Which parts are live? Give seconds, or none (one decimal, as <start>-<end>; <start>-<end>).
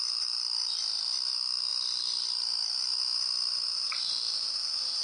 0.0-5.0